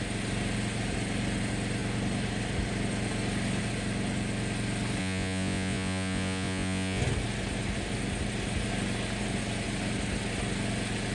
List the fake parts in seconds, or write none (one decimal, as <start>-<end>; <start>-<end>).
5.0-7.0